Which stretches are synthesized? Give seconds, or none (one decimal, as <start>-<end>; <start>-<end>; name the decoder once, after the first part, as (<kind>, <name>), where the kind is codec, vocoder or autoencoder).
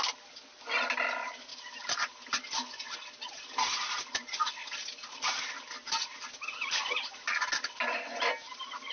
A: 1.5-2.4 (vocoder, BigVGAN v2)